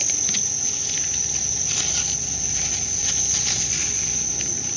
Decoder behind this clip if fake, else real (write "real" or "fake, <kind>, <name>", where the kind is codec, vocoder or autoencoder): real